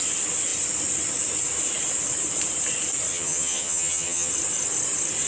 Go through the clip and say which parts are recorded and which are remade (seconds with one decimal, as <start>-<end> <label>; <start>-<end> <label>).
0.0-3.1 recorded; 3.1-4.3 remade; 4.3-5.3 recorded